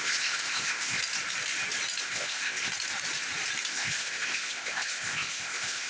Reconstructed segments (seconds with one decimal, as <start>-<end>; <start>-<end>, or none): 0.0-1.0; 2.0-2.7; 3.7-5.9